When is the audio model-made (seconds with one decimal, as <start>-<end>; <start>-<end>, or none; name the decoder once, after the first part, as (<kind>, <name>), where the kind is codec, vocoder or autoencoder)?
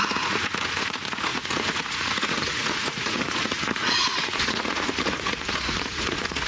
0.0-6.5 (vocoder, Vocos)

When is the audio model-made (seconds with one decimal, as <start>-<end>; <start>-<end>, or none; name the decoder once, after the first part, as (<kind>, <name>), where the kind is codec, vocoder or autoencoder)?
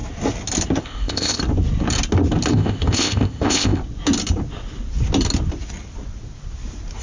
0.8-1.4 (codec, ZipCodec); 2.5-3.8